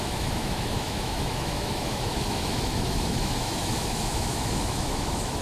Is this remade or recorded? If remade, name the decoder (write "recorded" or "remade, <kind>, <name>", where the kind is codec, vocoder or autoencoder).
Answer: remade, autoencoder, DAC-VAE